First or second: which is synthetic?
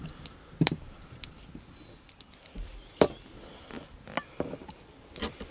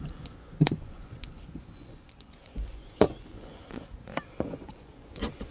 second